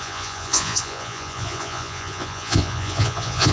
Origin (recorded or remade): remade